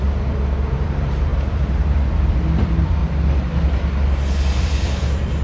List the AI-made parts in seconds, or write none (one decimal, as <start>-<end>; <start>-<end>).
0.0-3.0; 4.6-5.4